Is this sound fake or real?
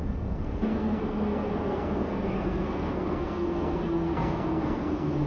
fake